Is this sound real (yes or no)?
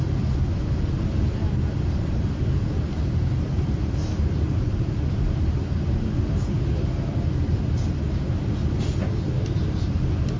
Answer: yes